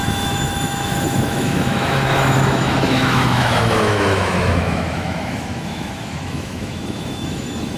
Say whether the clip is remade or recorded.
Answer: remade